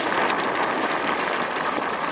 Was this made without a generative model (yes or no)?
yes